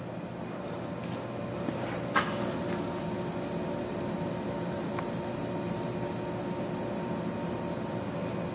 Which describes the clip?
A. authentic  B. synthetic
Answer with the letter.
A